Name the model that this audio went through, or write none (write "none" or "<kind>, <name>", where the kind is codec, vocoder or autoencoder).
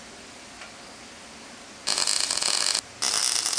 none